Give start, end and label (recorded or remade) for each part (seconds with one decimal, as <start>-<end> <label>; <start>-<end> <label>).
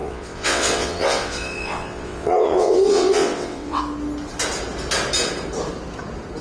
0.0-3.8 remade; 3.8-6.4 recorded